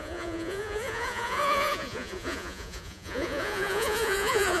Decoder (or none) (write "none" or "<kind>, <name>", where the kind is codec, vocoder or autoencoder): vocoder, Vocos